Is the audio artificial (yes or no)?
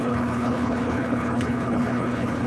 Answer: yes